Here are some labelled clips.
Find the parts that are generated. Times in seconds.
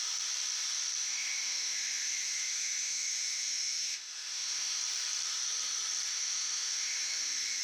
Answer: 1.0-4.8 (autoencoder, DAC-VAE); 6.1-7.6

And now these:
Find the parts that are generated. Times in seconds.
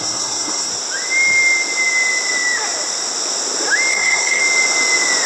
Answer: 0.0-0.7 (codec, SNAC); 3.9-4.4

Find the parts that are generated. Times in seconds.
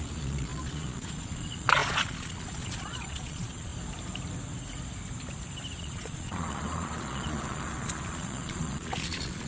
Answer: 0.0-3.7 (vocoder, Vocos); 5.8-9.5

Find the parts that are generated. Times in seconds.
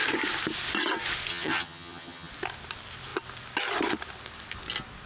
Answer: 1.3-2.3 (vocoder, HiFi-GAN)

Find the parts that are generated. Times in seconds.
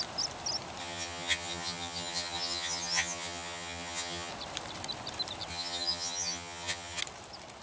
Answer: 0.8-4.3 (vocoder, HiFi-GAN); 5.5-7.0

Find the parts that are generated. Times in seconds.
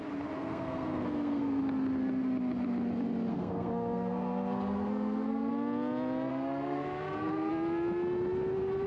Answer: 0.4-1.6 (codec, SNAC); 3.3-5.5; 6.3-7.5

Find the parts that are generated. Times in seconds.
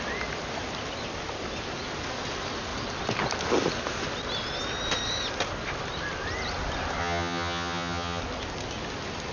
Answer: 7.0-8.2 (vocoder, HiFi-GAN)